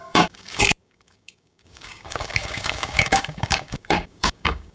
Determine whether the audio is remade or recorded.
remade